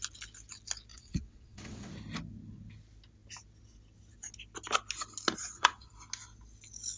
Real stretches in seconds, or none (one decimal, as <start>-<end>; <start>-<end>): 0.0-0.9; 1.9-5.4; 5.9-7.0